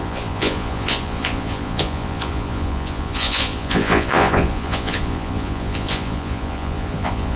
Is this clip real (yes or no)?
no